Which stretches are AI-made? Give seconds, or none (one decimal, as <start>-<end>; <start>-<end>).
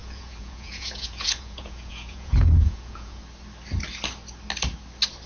0.0-3.2